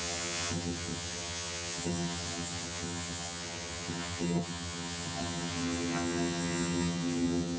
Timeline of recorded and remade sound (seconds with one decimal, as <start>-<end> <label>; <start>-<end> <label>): 0.0-7.6 remade